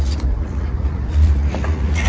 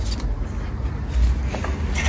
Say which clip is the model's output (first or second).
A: first